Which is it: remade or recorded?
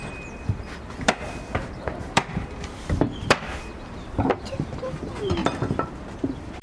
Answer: remade